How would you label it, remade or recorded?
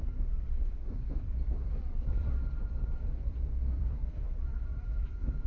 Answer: remade